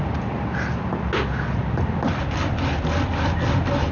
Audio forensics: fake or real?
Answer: real